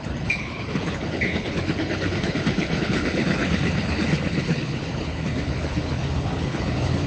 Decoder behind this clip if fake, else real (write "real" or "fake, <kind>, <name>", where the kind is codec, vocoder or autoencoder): fake, codec, HILCodec